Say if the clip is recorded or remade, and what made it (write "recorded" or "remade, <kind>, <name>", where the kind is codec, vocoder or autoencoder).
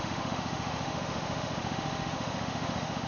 remade, autoencoder, DAC-VAE